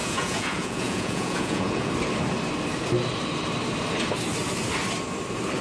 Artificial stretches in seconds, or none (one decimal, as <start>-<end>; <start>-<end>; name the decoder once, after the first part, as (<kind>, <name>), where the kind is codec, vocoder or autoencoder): 0.0-1.9 (vocoder, Vocos)